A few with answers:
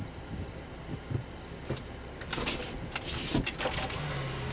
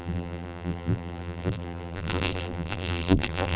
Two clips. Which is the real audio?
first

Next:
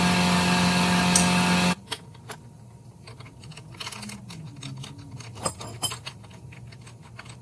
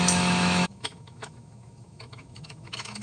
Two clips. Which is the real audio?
first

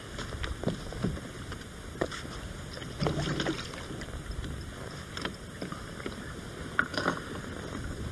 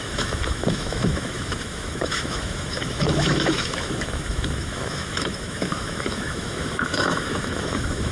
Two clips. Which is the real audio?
first